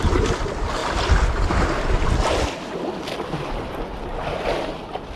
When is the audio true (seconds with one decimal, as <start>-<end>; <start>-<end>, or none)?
0.0-5.2